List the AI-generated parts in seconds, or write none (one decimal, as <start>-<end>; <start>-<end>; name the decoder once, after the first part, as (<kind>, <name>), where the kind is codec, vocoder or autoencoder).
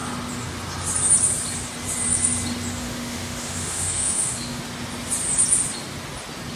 2.8-4.6 (autoencoder, DAC-VAE)